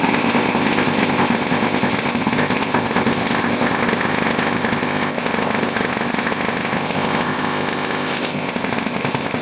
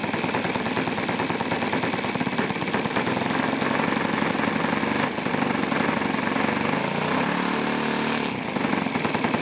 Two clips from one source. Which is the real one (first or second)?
second